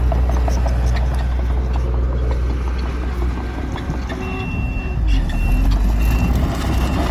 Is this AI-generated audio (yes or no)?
no